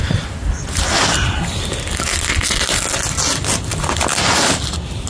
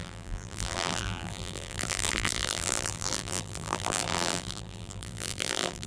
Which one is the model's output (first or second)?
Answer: second